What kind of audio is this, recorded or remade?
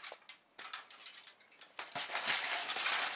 recorded